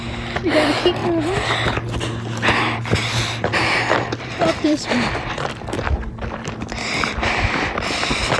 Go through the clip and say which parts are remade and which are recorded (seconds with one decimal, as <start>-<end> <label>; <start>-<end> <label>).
0.0-3.5 recorded; 3.5-8.4 remade